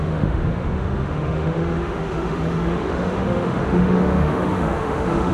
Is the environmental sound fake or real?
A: fake